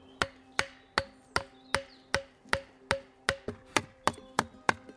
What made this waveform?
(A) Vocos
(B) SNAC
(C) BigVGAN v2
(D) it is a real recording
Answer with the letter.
D